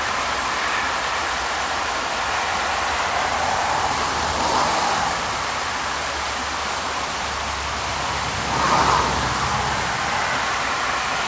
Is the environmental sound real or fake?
real